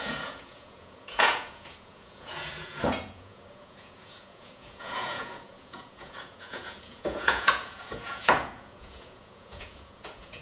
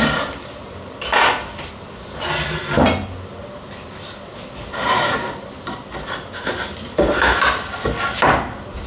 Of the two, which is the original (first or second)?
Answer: second